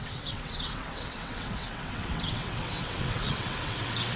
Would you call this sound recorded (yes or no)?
no